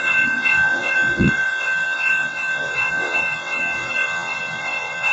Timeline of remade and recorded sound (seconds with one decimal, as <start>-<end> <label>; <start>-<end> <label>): 0.0-5.1 remade